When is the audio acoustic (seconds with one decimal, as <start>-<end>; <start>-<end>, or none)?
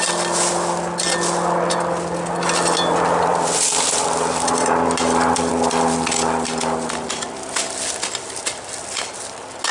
0.0-3.3; 5.5-9.7